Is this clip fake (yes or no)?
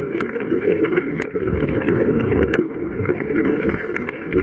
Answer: yes